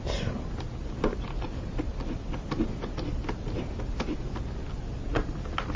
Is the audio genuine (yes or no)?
yes